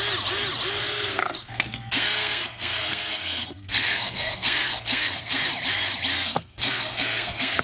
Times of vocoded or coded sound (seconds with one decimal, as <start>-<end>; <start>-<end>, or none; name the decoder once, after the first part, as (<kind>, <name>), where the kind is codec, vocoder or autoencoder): 0.8-5.4 (codec, SNAC); 6.1-7.6